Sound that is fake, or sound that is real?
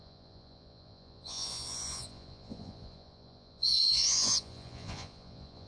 fake